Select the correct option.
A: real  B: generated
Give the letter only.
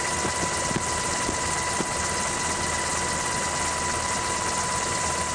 A